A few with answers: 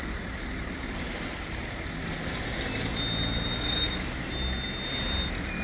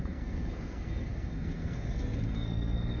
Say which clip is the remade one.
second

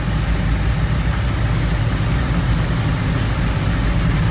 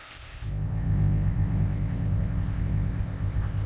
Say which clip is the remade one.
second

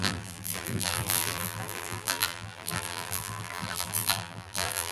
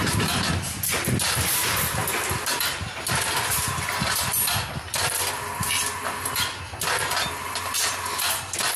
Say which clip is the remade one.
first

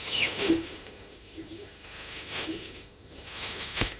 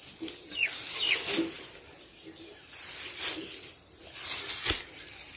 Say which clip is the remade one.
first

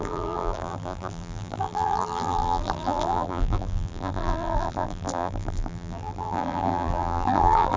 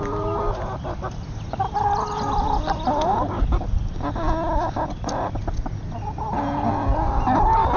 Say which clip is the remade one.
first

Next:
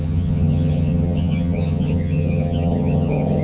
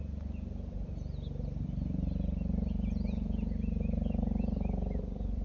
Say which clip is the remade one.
first